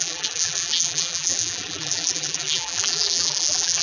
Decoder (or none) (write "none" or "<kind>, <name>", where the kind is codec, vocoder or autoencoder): vocoder, BigVGAN v2